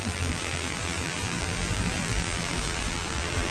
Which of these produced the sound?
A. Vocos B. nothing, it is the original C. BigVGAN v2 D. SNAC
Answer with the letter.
C